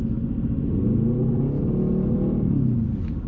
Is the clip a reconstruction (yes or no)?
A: no